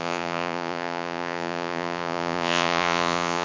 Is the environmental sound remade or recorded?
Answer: remade